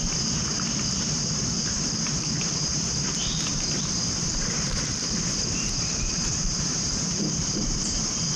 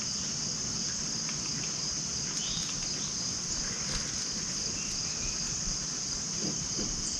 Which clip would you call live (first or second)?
second